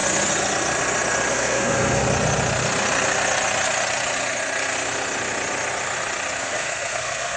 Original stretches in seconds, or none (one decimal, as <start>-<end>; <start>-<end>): 0.0-1.3; 2.0-6.4